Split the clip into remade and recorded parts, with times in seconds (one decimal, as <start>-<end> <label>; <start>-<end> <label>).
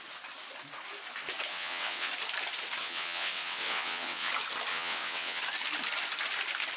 0.0-1.5 recorded; 1.5-2.1 remade; 2.1-2.8 recorded; 2.8-4.3 remade; 4.3-4.7 recorded; 4.7-5.4 remade; 5.4-6.8 recorded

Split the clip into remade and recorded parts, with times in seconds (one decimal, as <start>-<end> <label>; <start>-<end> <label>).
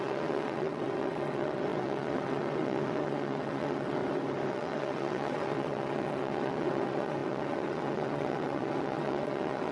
0.0-4.0 remade; 4.0-4.5 recorded; 4.5-9.7 remade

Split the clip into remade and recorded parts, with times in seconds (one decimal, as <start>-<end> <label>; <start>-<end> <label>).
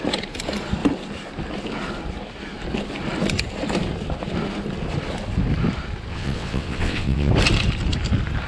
0.0-6.1 recorded; 6.1-7.3 remade; 7.3-8.5 recorded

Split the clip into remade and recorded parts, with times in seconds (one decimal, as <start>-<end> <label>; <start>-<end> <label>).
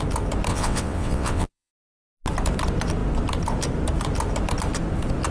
0.0-0.5 recorded; 0.5-1.7 remade; 1.7-5.3 recorded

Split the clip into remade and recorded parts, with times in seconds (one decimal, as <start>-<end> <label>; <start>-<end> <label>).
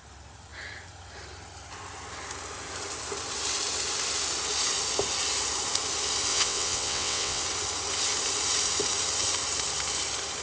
0.0-6.3 recorded; 6.3-7.4 remade; 7.4-10.4 recorded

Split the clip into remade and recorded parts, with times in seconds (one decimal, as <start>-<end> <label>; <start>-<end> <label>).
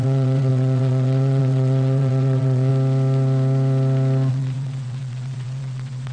0.0-2.7 remade; 2.7-4.3 recorded; 4.3-6.1 remade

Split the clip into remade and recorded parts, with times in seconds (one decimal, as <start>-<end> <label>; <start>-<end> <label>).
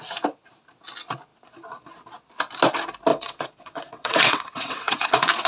0.0-3.1 recorded; 3.1-5.1 remade; 5.1-5.5 recorded